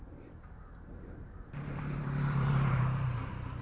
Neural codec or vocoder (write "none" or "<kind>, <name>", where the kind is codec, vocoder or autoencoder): vocoder, BigVGAN v2